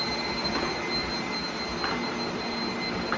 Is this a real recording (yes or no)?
yes